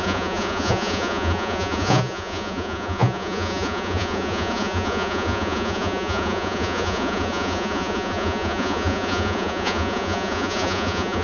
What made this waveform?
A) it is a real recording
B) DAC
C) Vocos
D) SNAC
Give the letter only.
C